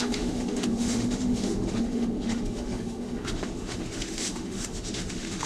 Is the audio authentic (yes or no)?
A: no